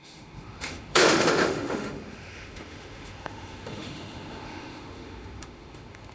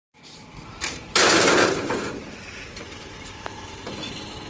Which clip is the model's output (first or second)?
first